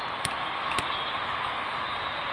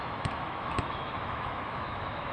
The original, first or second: first